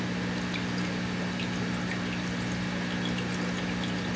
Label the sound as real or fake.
real